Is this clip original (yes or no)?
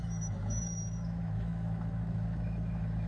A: no